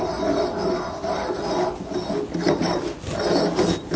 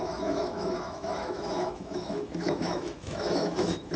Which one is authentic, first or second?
first